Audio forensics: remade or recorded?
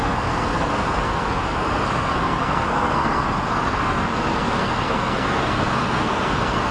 remade